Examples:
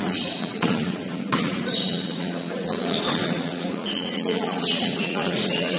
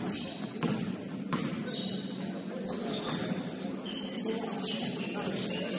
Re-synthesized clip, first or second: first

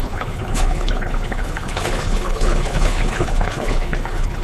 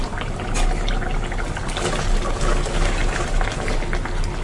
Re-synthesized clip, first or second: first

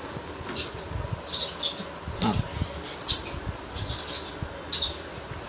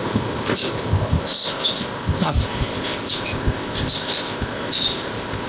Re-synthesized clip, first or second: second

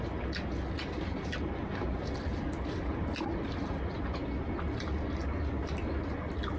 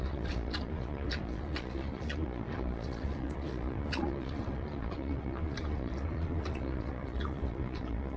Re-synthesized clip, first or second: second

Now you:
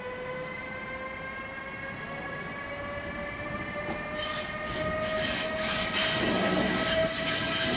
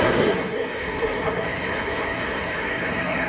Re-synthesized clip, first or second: second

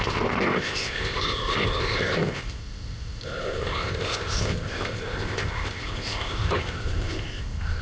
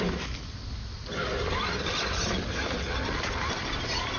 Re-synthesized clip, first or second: first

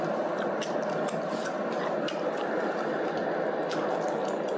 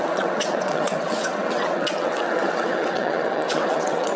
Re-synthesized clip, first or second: second